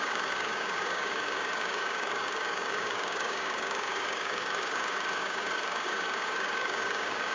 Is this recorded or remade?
remade